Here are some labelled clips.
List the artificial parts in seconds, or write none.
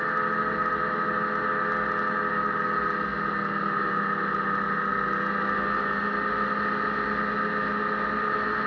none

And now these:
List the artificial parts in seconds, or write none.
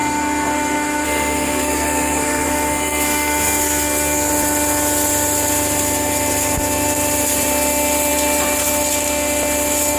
0.0-4.3 (codec, SNAC)